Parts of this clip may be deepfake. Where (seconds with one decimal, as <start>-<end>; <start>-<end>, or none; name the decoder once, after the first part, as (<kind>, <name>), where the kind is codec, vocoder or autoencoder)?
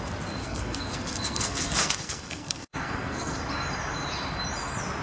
0.4-3.4 (codec, SNAC)